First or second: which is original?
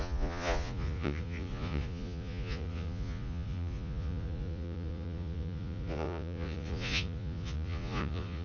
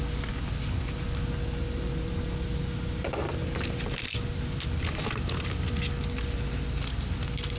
second